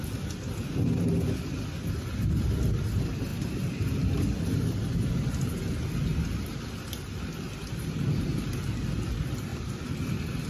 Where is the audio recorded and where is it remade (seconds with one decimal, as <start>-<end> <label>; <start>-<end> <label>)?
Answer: 0.0-10.5 recorded